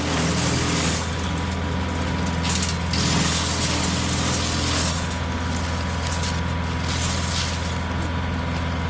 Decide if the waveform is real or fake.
real